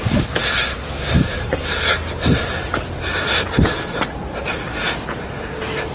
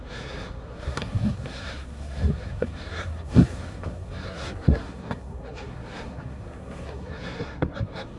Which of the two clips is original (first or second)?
first